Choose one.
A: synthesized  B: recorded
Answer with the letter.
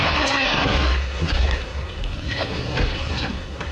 A